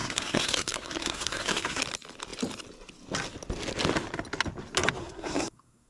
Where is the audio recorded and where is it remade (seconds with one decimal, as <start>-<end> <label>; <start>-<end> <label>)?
0.0-1.8 remade; 1.8-5.0 recorded; 5.0-5.9 remade